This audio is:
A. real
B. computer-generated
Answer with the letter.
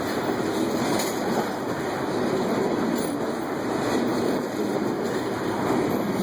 A